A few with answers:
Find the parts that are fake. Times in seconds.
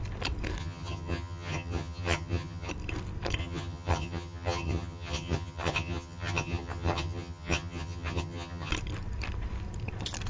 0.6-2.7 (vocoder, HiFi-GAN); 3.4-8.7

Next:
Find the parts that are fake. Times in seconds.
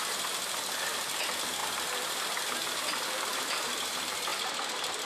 0.0-1.6 (vocoder, BigVGAN v2); 2.9-5.1